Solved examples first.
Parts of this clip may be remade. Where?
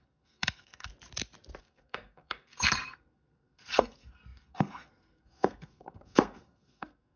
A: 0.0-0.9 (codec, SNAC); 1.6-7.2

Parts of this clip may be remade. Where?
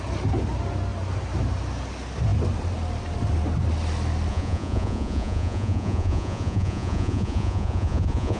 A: 4.3-8.4 (vocoder, Vocos)